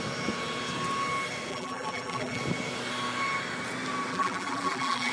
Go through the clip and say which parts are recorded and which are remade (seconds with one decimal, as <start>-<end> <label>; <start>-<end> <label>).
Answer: 0.0-1.5 recorded; 1.5-2.4 remade; 2.4-4.1 recorded; 4.1-5.1 remade